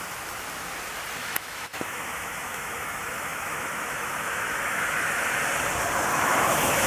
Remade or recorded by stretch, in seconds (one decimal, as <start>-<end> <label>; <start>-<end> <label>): 0.0-1.2 recorded; 1.2-5.3 remade; 5.3-6.1 recorded; 6.1-6.9 remade